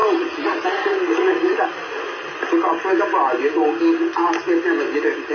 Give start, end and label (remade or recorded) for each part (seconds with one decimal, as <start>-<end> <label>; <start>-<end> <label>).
0.0-5.3 recorded